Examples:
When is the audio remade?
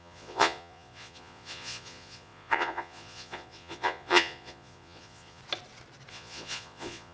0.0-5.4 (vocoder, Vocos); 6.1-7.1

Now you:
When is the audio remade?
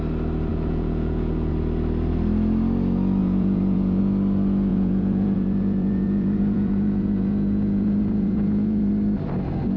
0.5-1.5 (vocoder, Vocos); 3.2-4.0; 4.7-8.9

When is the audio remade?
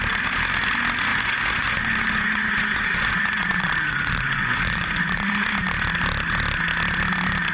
1.1-5.3 (vocoder, Vocos)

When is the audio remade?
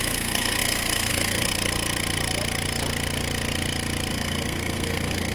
0.0-1.5 (codec, SNAC); 4.1-5.3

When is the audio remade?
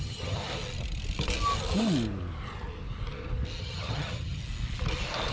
0.0-0.4 (vocoder, HiFi-GAN); 3.6-4.4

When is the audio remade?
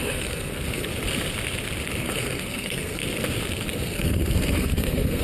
0.0-0.9 (codec, SNAC); 2.0-3.0; 3.7-5.2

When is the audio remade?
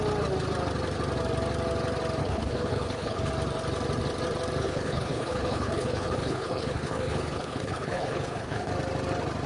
2.2-3.3 (codec, HILCodec); 4.6-8.7